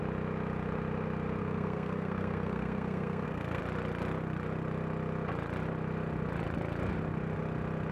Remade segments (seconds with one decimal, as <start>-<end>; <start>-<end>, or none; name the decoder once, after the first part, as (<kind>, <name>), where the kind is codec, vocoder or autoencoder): 1.4-3.6 (codec, SNAC)

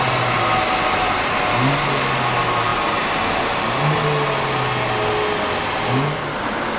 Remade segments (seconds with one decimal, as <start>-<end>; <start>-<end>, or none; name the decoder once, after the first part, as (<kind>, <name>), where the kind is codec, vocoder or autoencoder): none

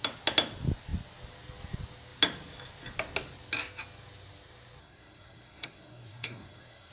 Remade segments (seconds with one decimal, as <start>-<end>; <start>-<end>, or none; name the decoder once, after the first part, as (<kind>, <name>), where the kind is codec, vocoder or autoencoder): 4.8-6.9 (codec, SNAC)

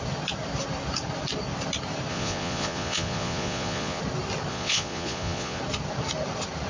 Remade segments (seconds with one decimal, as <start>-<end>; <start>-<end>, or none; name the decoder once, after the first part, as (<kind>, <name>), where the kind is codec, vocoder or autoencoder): 2.1-4.0 (vocoder, Vocos); 4.5-5.6